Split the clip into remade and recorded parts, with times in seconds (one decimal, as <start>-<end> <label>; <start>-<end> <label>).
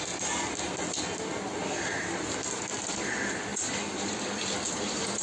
0.0-5.2 recorded